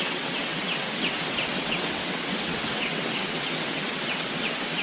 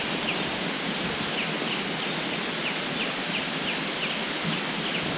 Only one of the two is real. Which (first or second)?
second